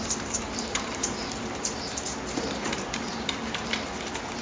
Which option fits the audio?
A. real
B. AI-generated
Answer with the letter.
B